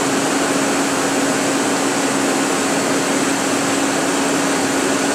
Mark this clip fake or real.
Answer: real